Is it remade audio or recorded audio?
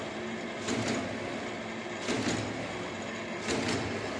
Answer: recorded